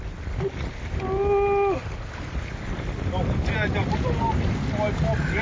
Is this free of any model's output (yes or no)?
yes